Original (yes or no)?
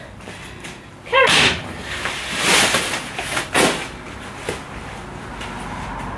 yes